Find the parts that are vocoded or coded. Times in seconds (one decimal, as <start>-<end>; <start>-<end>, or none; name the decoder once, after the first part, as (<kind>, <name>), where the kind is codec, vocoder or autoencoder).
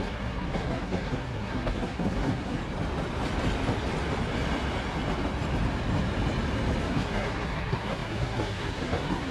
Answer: 0.0-2.6 (codec, SNAC); 6.8-9.3